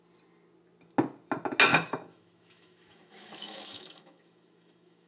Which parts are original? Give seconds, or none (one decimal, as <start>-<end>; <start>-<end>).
0.0-1.7